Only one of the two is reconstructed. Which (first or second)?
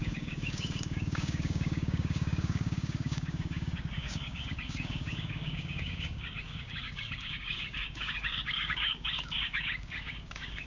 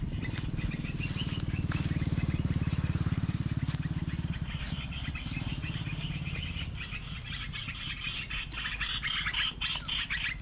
first